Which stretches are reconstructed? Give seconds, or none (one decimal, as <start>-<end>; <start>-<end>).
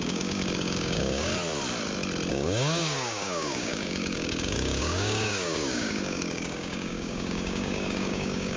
0.0-1.3; 2.3-8.6